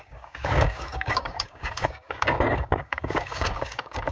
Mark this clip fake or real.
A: fake